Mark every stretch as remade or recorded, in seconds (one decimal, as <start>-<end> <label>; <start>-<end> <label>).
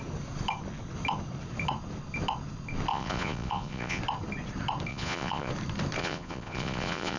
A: 0.0-2.9 recorded; 2.9-4.0 remade; 4.0-4.9 recorded; 4.9-5.5 remade; 5.5-6.0 recorded; 6.0-7.2 remade